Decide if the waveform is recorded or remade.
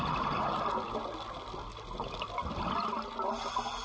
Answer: recorded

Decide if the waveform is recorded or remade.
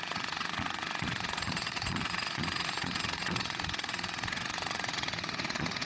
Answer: remade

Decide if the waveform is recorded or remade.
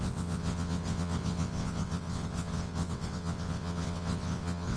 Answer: remade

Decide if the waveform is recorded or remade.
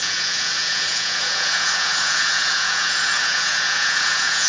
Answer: remade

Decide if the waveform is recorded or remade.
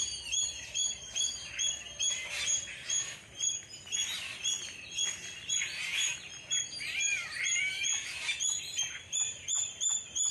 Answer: recorded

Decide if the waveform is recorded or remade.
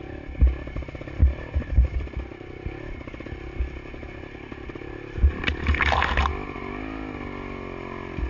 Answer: recorded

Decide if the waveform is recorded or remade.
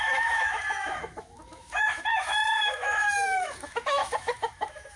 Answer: remade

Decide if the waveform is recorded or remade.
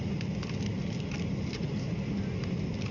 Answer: recorded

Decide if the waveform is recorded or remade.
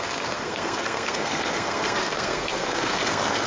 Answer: remade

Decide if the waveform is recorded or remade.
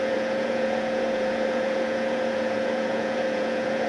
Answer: remade